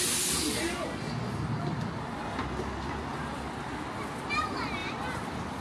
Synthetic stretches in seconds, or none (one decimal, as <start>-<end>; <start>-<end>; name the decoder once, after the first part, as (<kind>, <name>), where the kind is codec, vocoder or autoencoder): 4.8-5.6 (vocoder, BigVGAN v2)